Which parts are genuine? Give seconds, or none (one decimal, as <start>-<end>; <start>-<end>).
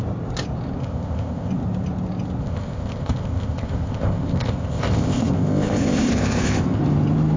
0.0-0.8; 1.5-2.4; 6.8-7.4